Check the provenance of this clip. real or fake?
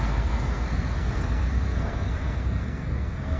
fake